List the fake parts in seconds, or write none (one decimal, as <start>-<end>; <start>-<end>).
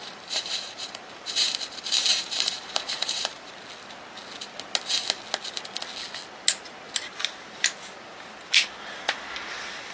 0.0-3.5